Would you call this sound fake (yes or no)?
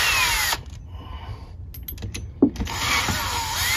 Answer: no